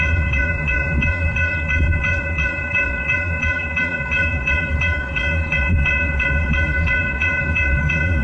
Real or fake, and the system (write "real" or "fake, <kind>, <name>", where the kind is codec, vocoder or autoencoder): fake, vocoder, Vocos